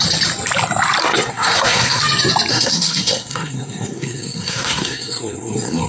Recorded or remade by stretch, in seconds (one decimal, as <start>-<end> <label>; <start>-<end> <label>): 0.0-1.0 recorded; 1.0-2.0 remade; 2.0-2.5 recorded; 2.5-5.9 remade